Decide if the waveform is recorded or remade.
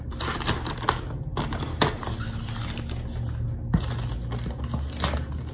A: recorded